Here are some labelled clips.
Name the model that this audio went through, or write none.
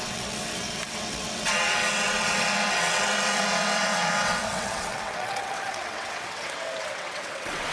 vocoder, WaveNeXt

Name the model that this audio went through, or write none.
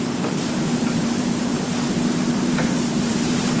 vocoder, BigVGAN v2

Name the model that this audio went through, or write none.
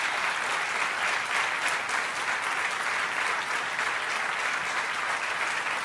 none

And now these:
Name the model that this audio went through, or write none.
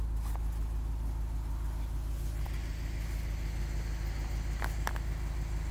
none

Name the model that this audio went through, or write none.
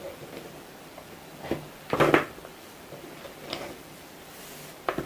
vocoder, BigVGAN v2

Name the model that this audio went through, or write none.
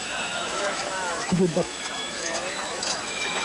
autoencoder, DAC-VAE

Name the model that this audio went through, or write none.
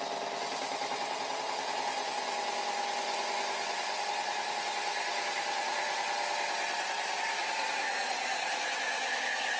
none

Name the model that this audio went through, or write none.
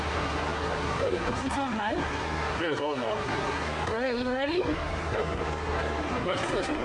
codec, SNAC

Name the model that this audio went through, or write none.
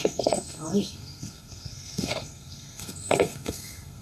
codec, SNAC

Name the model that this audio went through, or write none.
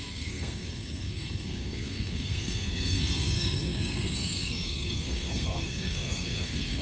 codec, SNAC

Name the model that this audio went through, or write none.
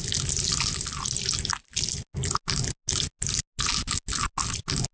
none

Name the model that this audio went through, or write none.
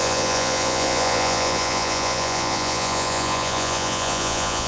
vocoder, Vocos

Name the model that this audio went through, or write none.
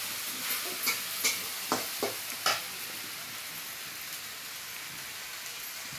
none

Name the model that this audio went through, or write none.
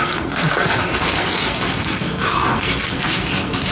codec, SNAC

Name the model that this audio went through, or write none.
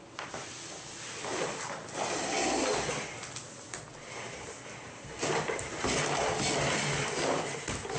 none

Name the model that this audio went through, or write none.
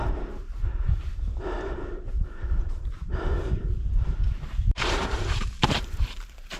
vocoder, BigVGAN v2